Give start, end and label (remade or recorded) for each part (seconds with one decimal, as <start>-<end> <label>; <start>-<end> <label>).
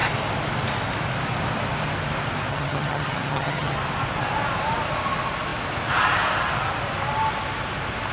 0.0-2.5 recorded; 2.5-3.8 remade; 3.8-8.1 recorded